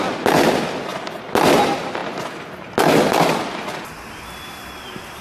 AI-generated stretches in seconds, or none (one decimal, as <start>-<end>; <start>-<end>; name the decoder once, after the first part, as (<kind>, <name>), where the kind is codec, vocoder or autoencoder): none